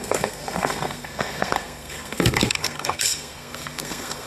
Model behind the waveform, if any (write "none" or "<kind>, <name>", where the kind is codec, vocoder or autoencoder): codec, SNAC